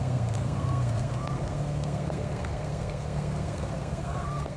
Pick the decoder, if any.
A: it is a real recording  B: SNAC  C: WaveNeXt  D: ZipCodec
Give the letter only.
B